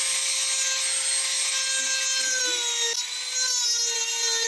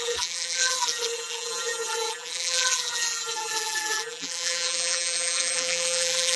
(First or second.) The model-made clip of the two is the second